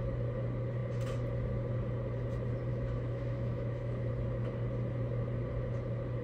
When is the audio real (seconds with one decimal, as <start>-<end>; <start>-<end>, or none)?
0.0-2.7; 4.1-6.2